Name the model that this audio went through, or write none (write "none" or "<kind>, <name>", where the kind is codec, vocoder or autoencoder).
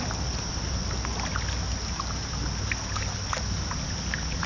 none